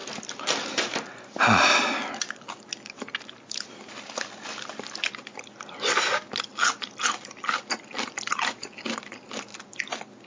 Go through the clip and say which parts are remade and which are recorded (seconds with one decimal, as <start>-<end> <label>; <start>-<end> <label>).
0.0-0.6 remade; 0.6-9.5 recorded; 9.5-10.3 remade